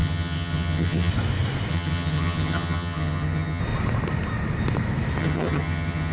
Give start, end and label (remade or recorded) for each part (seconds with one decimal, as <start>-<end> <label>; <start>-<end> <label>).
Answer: 0.0-1.1 remade; 1.1-1.7 recorded; 1.7-3.6 remade; 3.6-5.2 recorded; 5.2-6.1 remade